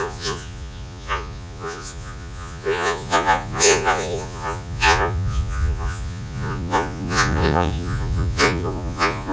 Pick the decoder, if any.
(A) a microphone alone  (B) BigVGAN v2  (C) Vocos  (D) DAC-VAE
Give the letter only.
C